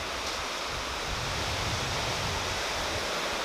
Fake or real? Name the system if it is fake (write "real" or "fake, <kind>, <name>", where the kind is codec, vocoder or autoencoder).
real